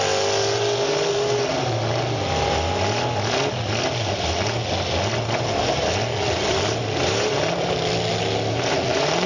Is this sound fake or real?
real